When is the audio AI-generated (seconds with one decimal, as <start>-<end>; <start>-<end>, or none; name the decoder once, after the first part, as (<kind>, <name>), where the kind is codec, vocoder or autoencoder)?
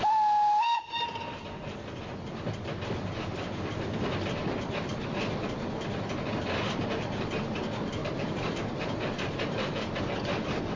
8.0-10.0 (vocoder, BigVGAN v2)